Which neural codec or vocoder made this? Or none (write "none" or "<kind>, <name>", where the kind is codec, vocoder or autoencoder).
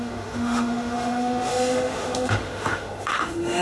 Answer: autoencoder, DAC-VAE